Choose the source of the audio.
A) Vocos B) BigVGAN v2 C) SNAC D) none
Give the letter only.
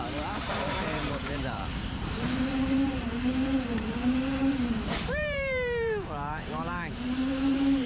B